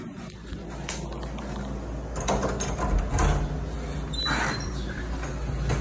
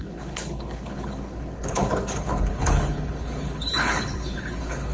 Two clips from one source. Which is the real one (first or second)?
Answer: first